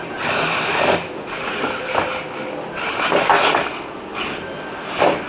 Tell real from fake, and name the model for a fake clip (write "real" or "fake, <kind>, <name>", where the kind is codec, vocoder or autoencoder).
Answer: real